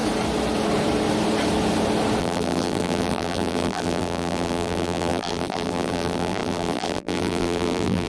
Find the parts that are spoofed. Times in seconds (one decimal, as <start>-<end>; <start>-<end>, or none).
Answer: 2.2-8.1